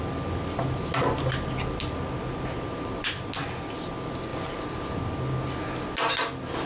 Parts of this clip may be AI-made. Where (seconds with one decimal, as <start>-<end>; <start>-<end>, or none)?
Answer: none